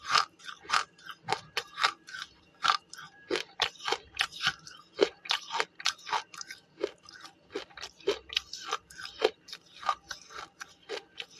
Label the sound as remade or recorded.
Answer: recorded